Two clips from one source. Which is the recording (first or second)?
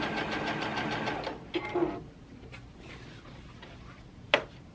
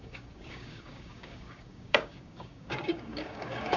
first